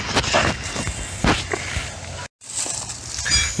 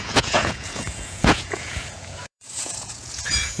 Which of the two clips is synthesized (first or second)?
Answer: second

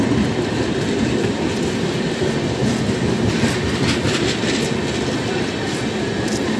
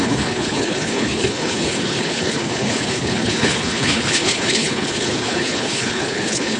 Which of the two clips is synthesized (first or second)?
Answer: second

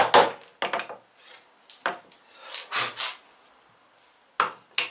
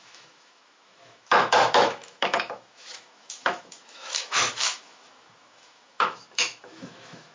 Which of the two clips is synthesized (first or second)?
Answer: second